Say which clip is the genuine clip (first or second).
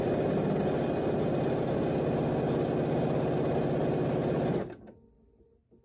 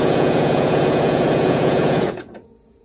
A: first